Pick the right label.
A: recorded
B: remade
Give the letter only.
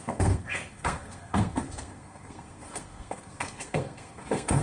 B